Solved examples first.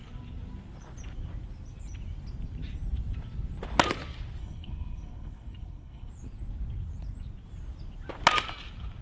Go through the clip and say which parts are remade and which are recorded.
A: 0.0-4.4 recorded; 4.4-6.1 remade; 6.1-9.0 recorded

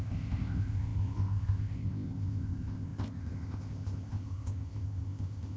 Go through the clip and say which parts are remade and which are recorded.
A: 0.0-5.6 remade